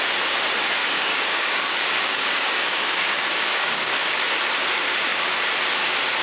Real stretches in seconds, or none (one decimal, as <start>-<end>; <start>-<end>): 0.0-0.8; 4.3-6.2